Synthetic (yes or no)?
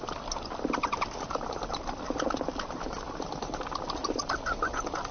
no